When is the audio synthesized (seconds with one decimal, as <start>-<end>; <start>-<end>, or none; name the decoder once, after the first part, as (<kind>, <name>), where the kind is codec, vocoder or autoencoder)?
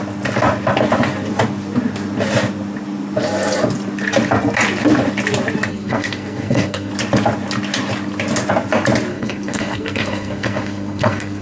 5.7-6.9 (codec, SNAC); 9.1-11.4